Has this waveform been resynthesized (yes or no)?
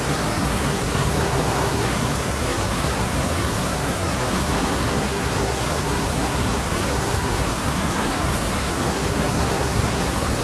yes